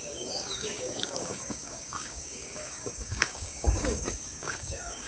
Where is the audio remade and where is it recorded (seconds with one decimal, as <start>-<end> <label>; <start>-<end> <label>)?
0.0-5.1 remade